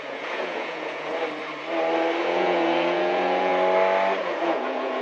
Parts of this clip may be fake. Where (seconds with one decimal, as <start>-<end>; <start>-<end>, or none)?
0.0-1.2; 2.2-3.5; 4.2-5.0